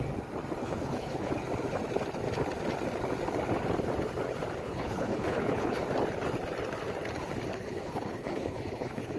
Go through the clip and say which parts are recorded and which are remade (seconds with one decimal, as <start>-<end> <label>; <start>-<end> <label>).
0.0-0.6 recorded; 0.6-1.3 remade; 1.3-4.6 recorded; 4.6-5.8 remade; 5.8-7.5 recorded; 7.5-9.2 remade